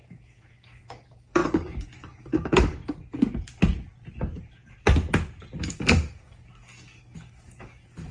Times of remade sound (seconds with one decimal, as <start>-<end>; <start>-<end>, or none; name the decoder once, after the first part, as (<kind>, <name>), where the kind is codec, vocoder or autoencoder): 0.0-2.8 (codec, DAC); 5.6-8.1